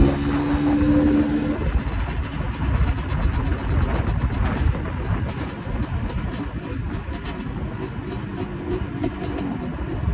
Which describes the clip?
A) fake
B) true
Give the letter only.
B